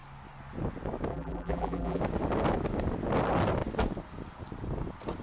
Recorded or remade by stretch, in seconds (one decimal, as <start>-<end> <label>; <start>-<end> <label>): 0.0-1.1 recorded; 1.1-2.0 remade; 2.0-5.2 recorded